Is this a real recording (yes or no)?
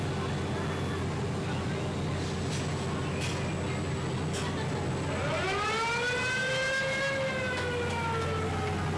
yes